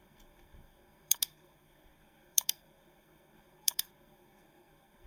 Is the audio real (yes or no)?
no